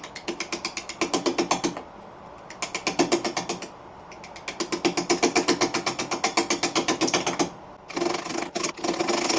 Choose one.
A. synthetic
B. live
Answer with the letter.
B